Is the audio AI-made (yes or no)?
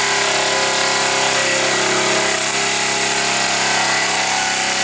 no